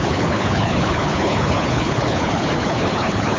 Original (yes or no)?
no